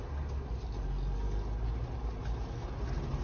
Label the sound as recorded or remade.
recorded